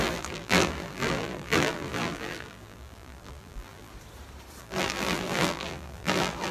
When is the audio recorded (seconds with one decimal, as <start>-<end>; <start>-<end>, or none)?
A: 3.9-4.6